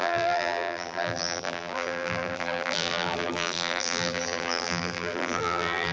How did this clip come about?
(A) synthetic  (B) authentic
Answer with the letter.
A